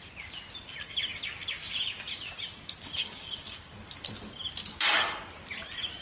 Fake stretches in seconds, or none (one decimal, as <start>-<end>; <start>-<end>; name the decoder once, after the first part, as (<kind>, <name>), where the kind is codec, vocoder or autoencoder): 3.0-3.7 (codec, DAC)